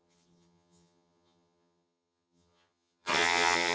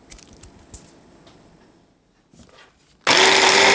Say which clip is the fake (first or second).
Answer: first